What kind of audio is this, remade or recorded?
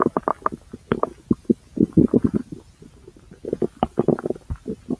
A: recorded